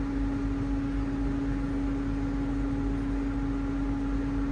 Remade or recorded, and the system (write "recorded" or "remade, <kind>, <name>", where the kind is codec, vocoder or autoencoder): recorded